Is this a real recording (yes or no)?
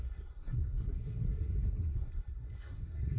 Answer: no